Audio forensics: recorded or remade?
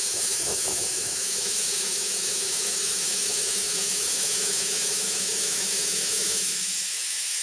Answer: remade